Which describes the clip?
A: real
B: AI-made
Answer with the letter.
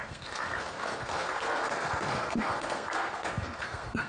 B